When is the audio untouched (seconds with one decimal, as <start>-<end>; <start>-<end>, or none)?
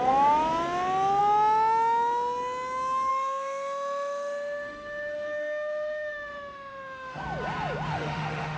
0.0-3.1; 7.2-7.9